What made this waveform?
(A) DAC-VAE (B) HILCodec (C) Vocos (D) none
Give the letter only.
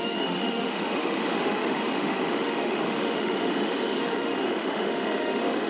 A